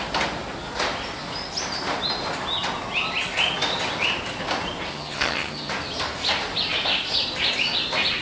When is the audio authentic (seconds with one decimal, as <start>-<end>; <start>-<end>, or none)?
0.0-4.9; 5.7-8.2